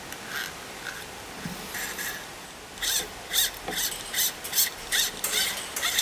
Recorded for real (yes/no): yes